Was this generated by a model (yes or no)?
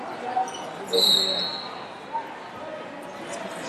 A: no